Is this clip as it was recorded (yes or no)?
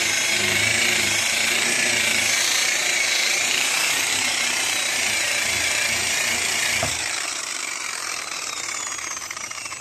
no